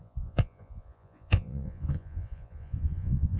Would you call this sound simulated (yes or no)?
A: yes